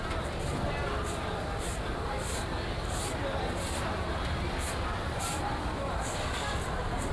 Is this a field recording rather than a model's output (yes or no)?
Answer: yes